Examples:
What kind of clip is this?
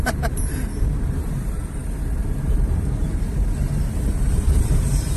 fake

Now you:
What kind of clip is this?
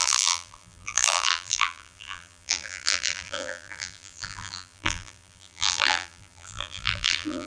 fake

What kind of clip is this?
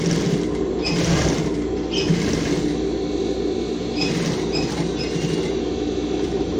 real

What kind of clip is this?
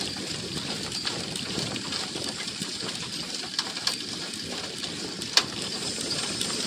fake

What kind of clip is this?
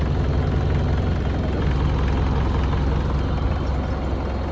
real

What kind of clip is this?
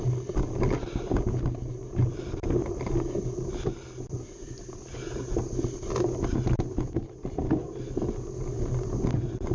real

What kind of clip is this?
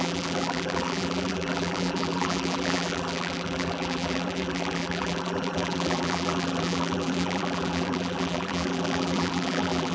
fake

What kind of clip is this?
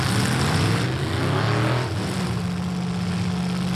real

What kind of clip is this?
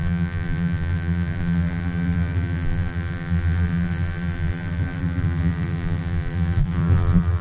fake